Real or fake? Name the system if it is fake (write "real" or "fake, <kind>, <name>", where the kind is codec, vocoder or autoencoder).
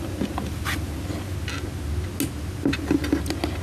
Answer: real